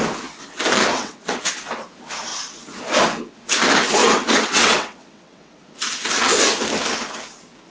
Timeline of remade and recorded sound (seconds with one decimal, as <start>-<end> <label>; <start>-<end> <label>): 0.0-0.9 recorded; 0.9-1.5 remade; 1.5-4.0 recorded; 4.0-5.6 remade; 5.6-7.7 recorded

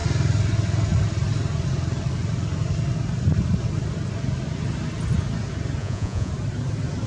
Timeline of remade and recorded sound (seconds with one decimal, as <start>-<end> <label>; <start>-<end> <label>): 0.0-5.8 recorded; 5.8-6.3 remade; 6.3-7.1 recorded

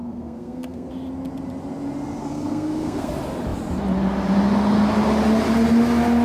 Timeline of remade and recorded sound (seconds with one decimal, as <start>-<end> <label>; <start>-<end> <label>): 0.0-0.9 remade; 0.9-2.2 recorded; 2.2-3.1 remade; 3.1-6.2 recorded